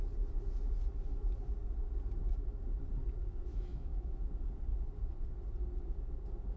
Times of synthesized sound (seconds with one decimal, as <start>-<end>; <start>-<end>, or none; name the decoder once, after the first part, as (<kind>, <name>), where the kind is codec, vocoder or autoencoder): 3.5-4.2 (autoencoder, DAC-VAE)